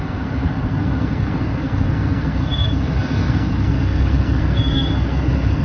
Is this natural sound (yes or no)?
no